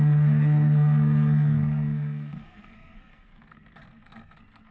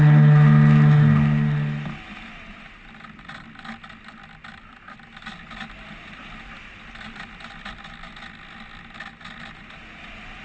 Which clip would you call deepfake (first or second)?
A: first